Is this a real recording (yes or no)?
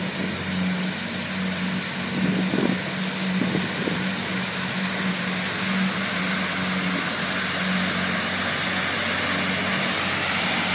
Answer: yes